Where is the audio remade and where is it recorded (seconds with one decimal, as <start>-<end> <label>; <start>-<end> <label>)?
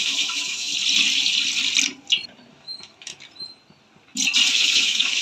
0.0-0.7 remade; 0.7-2.5 recorded; 2.5-3.1 remade; 3.1-4.5 recorded; 4.5-5.2 remade